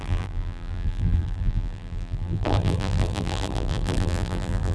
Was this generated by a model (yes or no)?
yes